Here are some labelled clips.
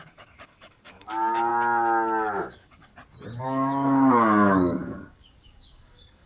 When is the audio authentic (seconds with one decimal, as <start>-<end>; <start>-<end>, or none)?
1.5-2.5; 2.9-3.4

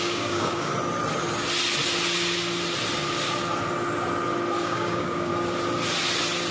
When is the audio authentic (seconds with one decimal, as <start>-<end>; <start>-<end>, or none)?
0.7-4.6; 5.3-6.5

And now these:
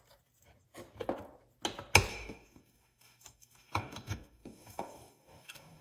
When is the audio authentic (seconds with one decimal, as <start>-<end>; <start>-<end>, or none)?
0.0-2.1

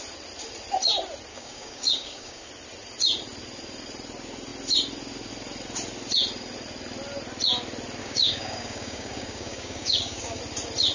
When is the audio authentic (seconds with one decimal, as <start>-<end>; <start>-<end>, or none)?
0.0-1.3; 2.5-8.0; 10.4-10.9

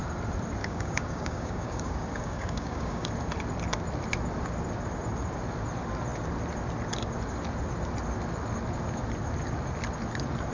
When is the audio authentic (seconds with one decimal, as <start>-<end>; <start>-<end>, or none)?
0.0-0.6; 3.1-10.5

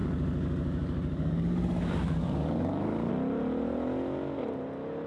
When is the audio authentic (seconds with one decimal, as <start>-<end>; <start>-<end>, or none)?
3.1-5.1

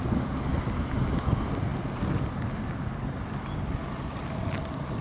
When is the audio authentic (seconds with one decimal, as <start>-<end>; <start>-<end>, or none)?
0.0-5.0